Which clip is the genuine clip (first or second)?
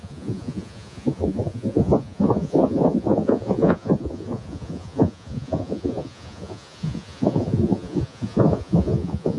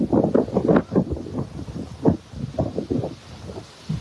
second